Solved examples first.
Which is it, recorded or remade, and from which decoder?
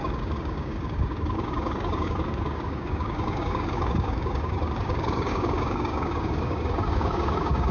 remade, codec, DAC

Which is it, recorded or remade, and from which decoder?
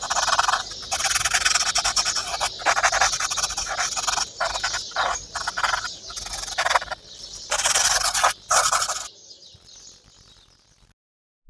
recorded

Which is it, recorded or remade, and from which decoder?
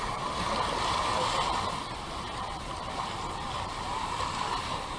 recorded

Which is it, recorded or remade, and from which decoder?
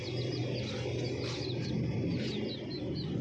recorded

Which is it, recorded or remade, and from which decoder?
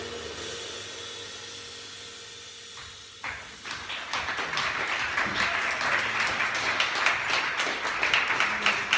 recorded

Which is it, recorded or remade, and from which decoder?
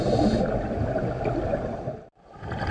recorded